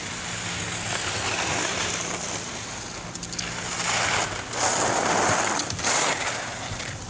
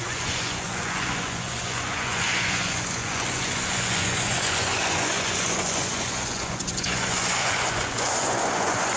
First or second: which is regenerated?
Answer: second